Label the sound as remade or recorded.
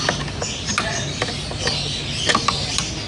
recorded